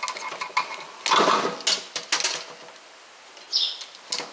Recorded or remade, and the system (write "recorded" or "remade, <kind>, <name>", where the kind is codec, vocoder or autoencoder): recorded